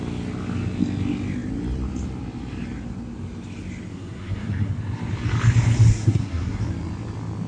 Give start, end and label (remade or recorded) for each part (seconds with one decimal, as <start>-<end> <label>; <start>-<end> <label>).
0.0-3.9 recorded; 3.9-4.7 remade; 4.7-5.9 recorded; 5.9-6.6 remade; 6.6-7.5 recorded